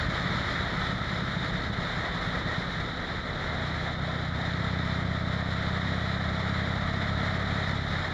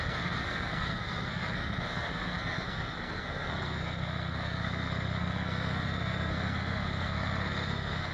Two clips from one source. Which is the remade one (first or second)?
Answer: second